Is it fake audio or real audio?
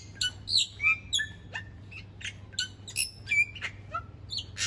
real